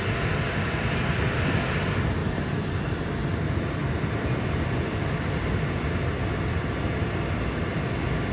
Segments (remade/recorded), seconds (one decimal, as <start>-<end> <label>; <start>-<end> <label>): 0.0-8.3 recorded